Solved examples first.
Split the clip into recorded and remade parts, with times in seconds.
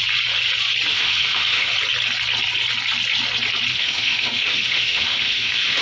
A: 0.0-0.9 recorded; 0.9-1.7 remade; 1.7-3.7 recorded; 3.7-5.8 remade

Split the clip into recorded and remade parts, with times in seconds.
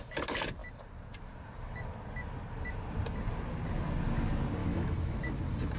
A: 0.0-4.6 recorded; 4.6-5.2 remade; 5.2-5.8 recorded